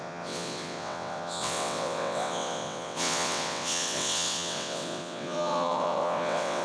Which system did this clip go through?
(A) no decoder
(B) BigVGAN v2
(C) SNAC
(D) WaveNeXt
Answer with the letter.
D